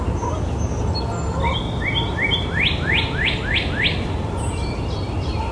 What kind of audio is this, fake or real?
real